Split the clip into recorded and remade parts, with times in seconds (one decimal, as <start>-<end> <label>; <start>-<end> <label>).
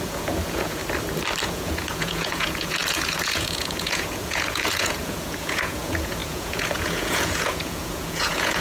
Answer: 0.0-0.8 remade; 0.8-1.4 recorded; 1.4-8.6 remade